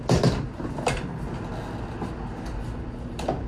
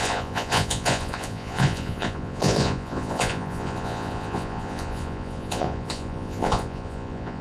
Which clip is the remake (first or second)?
second